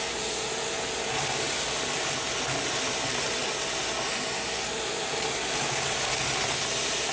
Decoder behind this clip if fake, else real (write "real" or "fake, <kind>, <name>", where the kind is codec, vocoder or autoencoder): real